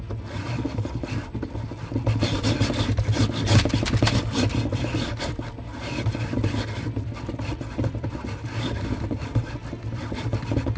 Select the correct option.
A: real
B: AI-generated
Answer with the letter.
A